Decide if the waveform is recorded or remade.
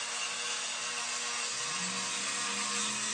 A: recorded